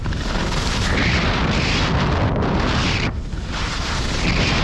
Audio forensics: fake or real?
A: real